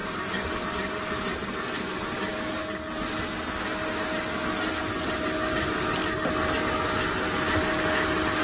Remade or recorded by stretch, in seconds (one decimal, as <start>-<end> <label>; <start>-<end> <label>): 0.0-8.4 recorded